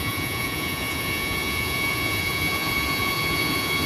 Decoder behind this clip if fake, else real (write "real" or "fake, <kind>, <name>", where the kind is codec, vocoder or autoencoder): fake, vocoder, Vocos